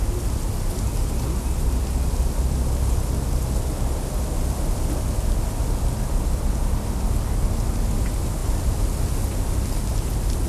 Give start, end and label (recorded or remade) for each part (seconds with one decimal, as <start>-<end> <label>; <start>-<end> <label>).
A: 0.0-10.5 recorded